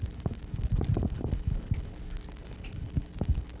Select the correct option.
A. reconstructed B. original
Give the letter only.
B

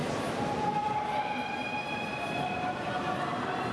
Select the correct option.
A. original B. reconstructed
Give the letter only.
A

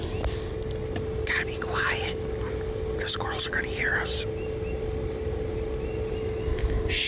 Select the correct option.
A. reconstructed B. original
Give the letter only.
B